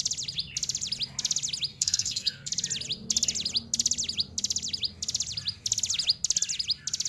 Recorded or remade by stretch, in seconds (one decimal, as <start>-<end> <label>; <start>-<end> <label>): 0.0-1.7 recorded; 1.7-2.5 remade; 2.5-7.1 recorded